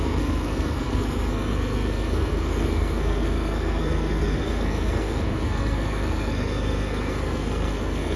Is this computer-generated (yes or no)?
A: yes